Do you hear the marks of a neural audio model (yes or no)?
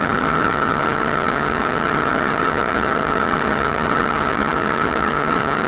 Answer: yes